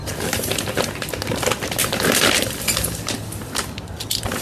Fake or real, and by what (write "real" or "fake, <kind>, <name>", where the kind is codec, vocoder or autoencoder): real